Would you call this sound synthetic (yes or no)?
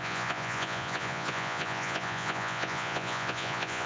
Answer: yes